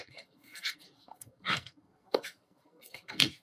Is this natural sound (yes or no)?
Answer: no